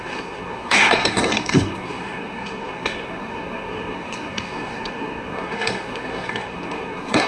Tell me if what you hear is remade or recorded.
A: remade